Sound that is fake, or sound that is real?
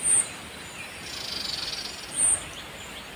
real